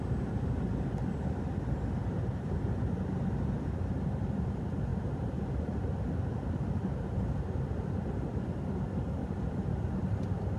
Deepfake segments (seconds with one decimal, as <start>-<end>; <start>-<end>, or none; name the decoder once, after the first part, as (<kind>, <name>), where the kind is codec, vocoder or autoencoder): 2.0-2.7 (vocoder, BigVGAN v2)